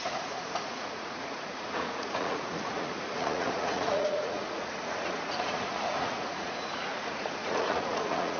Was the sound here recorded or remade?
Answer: remade